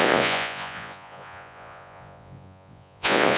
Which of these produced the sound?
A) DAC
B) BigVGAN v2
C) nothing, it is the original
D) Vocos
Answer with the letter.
D